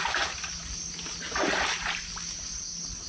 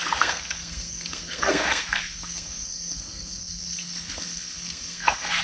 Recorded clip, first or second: first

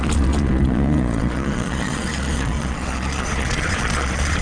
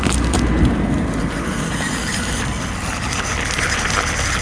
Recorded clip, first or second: second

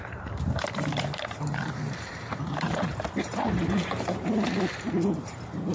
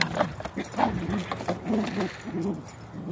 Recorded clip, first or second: second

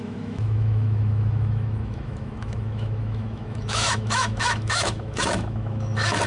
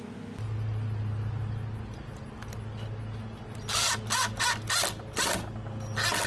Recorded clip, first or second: second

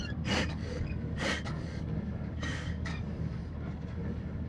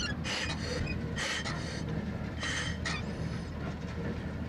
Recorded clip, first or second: second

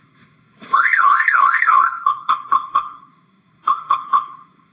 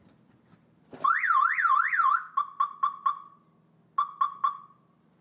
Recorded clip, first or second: second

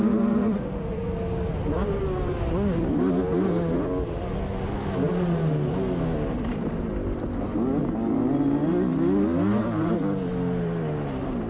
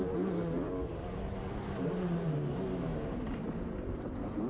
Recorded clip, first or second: first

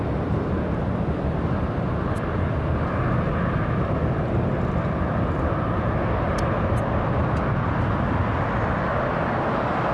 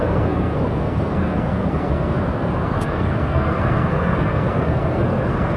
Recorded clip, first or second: first